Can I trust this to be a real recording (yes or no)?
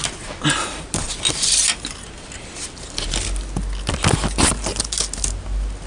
yes